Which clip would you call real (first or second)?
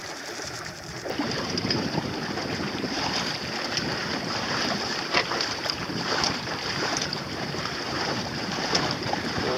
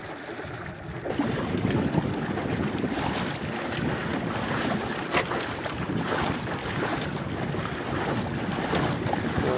second